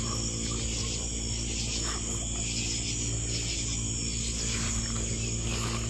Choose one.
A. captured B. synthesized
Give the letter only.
A